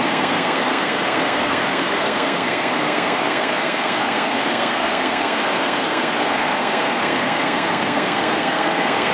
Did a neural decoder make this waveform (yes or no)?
yes